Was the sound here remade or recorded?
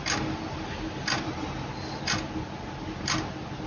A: recorded